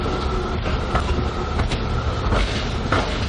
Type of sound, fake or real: real